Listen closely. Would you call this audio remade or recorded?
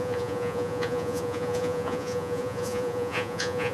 remade